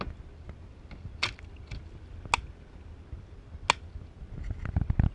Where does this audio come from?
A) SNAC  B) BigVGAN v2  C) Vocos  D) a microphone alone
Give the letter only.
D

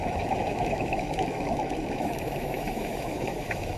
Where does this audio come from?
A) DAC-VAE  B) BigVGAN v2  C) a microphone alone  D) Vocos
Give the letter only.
A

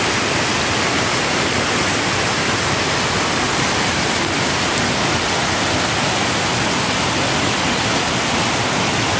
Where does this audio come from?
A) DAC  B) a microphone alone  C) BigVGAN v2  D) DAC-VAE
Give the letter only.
B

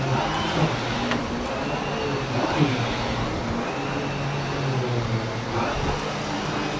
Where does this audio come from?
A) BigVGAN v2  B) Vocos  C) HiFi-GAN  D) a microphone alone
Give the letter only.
D